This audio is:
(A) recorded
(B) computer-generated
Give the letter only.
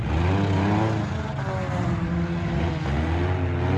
A